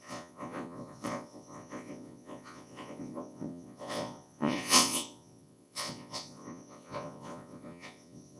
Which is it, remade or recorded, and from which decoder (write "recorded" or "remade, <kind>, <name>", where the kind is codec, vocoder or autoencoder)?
remade, vocoder, Vocos